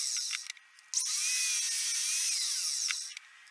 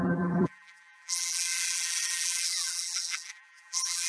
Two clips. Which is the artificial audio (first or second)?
second